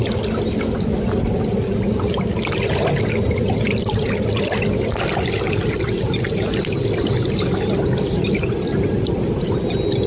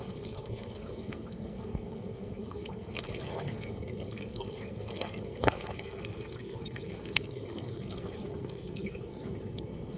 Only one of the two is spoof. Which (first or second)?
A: second